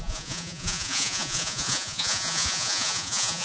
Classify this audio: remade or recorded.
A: remade